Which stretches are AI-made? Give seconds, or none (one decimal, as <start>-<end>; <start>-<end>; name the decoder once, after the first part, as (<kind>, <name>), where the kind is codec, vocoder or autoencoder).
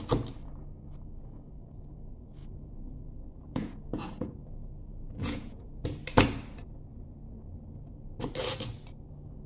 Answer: 2.4-3.0 (vocoder, Vocos); 3.4-5.9